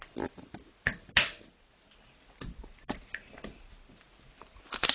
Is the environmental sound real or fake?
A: real